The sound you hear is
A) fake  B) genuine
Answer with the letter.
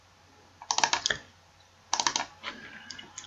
B